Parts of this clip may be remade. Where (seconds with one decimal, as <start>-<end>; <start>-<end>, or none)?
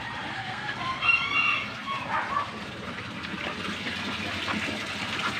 0.4-1.0